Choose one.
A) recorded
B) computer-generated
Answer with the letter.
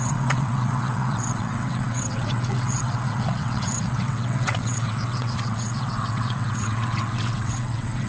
B